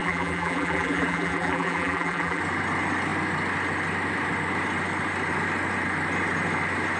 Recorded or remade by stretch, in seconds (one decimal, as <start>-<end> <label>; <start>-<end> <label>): 0.0-2.4 remade; 2.4-7.0 recorded